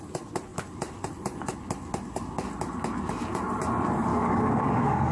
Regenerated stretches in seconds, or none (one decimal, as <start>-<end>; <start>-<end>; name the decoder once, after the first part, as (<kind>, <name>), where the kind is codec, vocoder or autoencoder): 4.1-5.1 (codec, DAC)